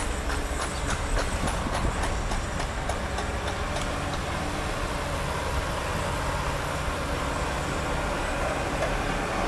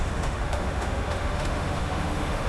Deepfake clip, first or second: second